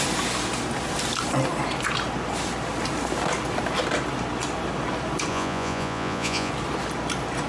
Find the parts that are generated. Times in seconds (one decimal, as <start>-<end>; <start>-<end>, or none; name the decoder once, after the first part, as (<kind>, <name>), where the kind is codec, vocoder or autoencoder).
5.3-6.5 (vocoder, Vocos)